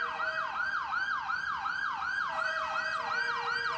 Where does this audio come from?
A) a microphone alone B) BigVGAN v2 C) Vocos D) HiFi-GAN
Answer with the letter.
A